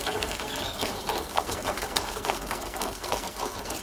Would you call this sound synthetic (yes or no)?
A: yes